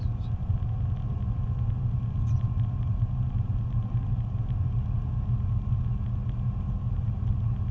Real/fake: real